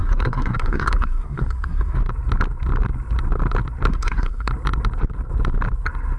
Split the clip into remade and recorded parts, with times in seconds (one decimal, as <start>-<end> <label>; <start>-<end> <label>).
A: 0.0-2.0 remade; 2.0-3.9 recorded; 3.9-4.5 remade; 4.5-6.2 recorded